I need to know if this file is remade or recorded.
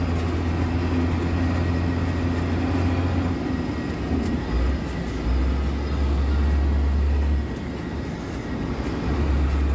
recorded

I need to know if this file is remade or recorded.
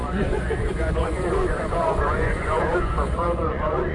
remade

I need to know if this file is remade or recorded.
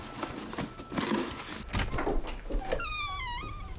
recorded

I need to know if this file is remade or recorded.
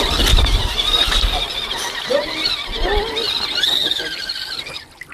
recorded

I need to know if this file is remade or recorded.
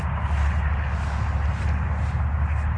recorded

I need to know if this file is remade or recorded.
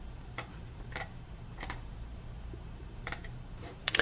remade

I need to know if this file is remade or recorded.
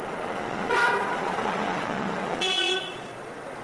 remade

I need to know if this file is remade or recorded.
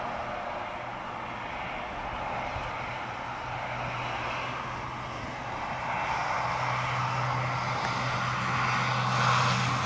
recorded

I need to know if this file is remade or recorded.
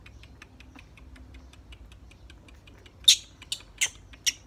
recorded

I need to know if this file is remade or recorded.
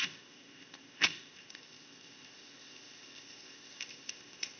remade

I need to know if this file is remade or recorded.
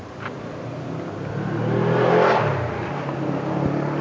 recorded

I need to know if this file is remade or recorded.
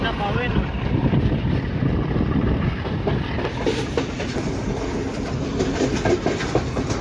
recorded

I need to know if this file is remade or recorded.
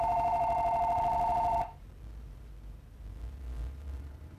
remade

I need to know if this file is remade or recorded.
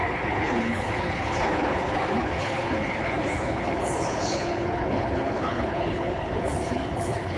remade